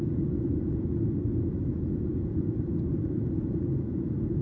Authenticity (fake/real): fake